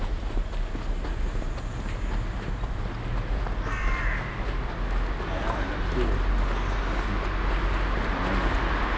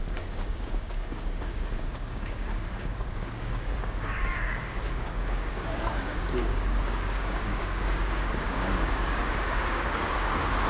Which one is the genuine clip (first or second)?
first